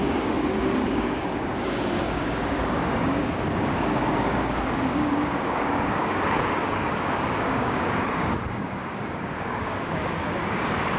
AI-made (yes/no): yes